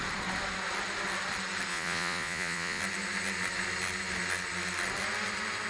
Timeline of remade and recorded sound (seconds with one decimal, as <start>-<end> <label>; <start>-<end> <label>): 0.0-1.7 recorded; 1.7-2.8 remade; 2.8-5.7 recorded